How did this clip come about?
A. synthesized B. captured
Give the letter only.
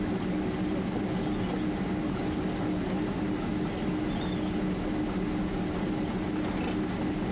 B